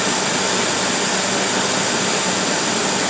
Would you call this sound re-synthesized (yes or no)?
no